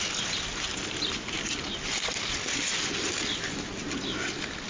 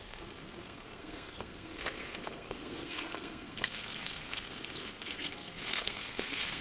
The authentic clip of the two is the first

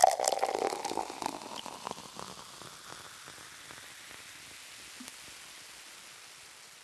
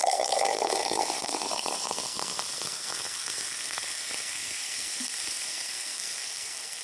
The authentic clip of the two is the first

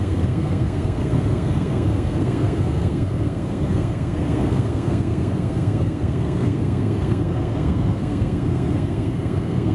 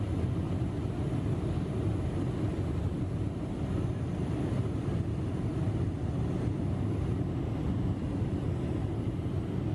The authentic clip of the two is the second